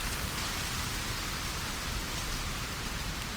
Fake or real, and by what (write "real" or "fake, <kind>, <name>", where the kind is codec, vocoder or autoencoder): fake, vocoder, BigVGAN v2